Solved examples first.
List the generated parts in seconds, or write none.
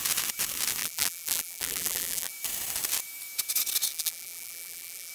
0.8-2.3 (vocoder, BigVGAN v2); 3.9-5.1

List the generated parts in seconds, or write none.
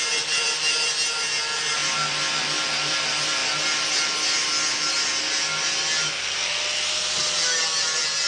none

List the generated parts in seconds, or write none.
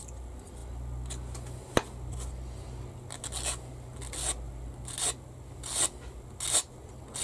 none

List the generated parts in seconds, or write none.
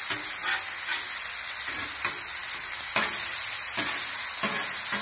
none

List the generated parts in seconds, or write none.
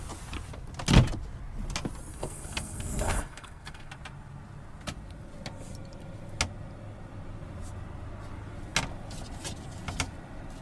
2.1-3.9 (codec, SNAC)